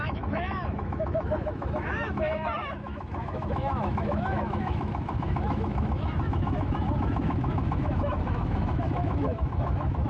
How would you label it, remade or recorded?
remade